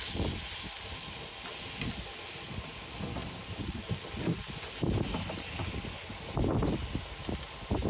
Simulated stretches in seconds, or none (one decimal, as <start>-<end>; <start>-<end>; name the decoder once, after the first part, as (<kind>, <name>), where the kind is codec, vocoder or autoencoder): none